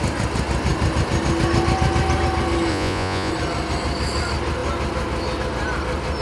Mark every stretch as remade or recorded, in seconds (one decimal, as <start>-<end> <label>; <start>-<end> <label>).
0.0-2.7 recorded; 2.7-3.3 remade; 3.3-6.2 recorded